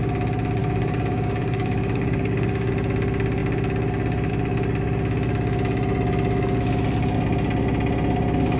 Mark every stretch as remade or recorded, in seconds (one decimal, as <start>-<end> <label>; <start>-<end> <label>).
0.0-0.6 recorded; 0.6-2.7 remade; 2.7-8.6 recorded

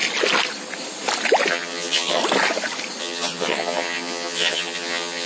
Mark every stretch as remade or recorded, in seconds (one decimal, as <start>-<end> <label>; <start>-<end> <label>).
0.0-1.5 recorded; 1.5-2.2 remade; 2.2-3.0 recorded; 3.0-5.3 remade

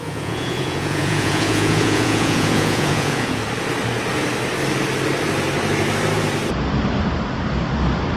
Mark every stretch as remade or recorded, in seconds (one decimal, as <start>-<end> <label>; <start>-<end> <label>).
0.0-3.4 remade; 3.4-8.2 recorded

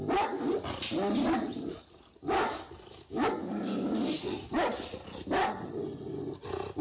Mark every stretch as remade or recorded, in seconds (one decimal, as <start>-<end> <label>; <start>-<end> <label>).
0.0-3.4 recorded; 3.4-3.9 remade; 3.9-6.8 recorded

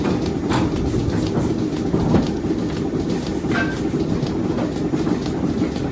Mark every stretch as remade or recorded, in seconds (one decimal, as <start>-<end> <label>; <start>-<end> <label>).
0.0-5.9 recorded

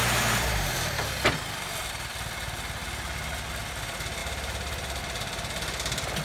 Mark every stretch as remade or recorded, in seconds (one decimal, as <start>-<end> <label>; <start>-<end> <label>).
0.0-1.3 remade; 1.3-4.2 recorded; 4.2-5.0 remade; 5.0-6.2 recorded

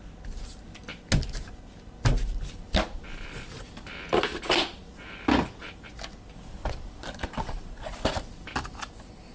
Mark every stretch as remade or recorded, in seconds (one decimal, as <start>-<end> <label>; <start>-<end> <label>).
0.0-9.3 recorded

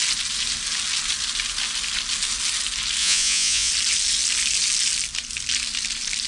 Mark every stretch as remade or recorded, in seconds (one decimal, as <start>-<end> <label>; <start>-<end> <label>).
0.0-3.0 recorded; 3.0-3.7 remade; 3.7-6.3 recorded